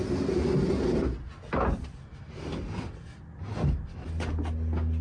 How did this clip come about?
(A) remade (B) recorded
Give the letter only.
B